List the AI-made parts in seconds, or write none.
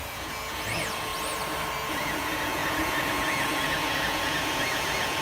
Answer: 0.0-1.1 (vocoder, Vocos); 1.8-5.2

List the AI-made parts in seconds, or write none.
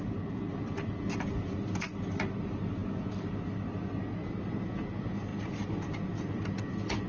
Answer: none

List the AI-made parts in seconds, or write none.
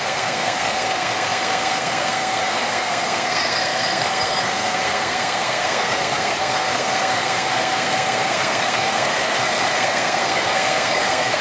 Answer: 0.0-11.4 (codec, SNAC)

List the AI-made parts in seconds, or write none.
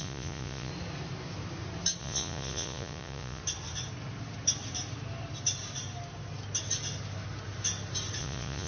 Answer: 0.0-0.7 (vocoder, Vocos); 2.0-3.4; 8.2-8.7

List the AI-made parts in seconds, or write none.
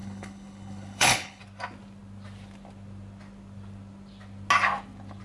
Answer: 0.0-1.4 (codec, HILCodec)